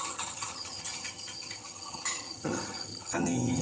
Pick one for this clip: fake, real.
fake